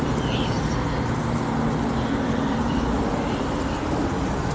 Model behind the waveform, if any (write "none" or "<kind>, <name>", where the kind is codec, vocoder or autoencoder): none